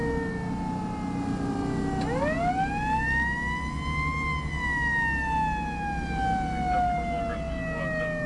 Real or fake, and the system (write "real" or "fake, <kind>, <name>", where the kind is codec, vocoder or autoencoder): real